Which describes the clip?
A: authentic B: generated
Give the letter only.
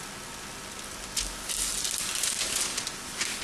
A